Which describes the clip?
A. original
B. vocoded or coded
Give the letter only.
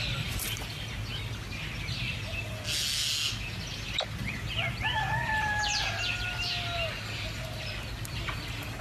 A